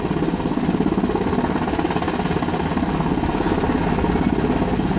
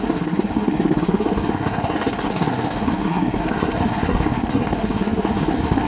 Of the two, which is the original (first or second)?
first